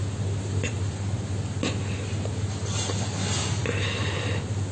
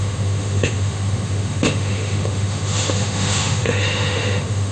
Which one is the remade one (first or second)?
second